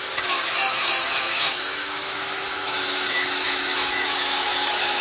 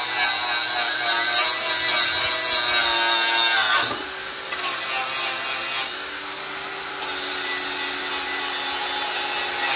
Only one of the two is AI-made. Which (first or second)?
first